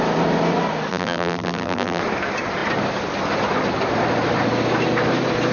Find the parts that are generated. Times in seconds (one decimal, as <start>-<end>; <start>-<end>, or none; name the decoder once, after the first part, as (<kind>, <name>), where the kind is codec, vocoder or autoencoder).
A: 0.9-2.0 (vocoder, BigVGAN v2)